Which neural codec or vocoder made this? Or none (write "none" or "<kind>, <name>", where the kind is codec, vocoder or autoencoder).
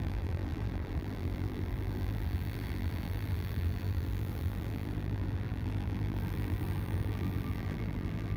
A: vocoder, BigVGAN v2